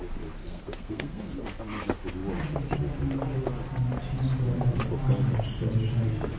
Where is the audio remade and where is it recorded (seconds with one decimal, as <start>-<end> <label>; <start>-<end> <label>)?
0.0-0.4 recorded; 0.4-1.6 remade; 1.6-6.4 recorded